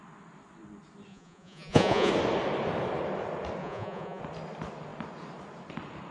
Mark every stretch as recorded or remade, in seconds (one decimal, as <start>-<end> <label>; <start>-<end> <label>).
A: 0.0-1.1 recorded; 1.1-2.1 remade; 2.1-3.6 recorded; 3.6-4.2 remade; 4.2-6.1 recorded